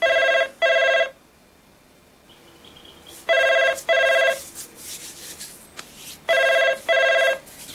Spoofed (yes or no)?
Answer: no